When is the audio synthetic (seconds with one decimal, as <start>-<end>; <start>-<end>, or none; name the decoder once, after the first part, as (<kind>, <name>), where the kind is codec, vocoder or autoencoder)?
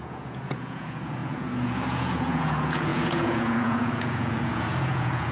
0.0-5.3 (vocoder, Vocos)